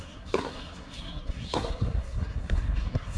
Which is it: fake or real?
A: fake